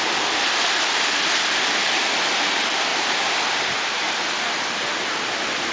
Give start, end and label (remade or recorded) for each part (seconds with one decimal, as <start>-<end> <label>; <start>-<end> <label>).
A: 0.0-2.9 recorded; 2.9-4.1 remade; 4.1-5.7 recorded